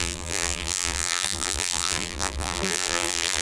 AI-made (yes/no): yes